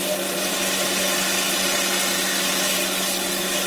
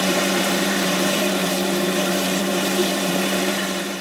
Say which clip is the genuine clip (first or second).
first